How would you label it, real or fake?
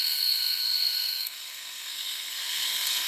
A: fake